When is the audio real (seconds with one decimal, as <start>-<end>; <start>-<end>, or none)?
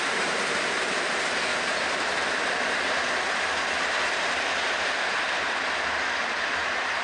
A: 1.5-4.0